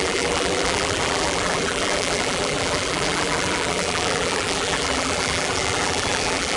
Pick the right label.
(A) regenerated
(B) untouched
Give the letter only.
A